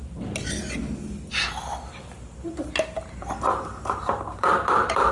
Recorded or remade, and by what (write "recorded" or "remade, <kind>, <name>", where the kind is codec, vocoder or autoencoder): recorded